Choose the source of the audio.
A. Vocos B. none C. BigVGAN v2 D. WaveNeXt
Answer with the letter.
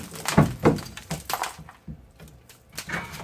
B